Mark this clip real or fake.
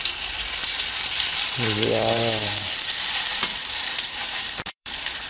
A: fake